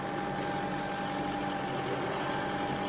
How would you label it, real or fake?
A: real